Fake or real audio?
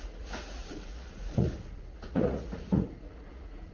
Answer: fake